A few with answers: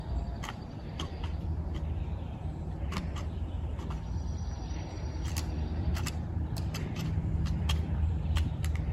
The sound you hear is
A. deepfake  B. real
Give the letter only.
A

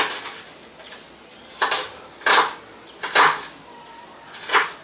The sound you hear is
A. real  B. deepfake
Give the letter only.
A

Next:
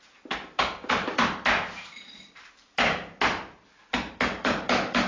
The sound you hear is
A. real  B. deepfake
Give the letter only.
B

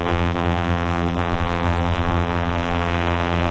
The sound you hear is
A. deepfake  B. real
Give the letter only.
A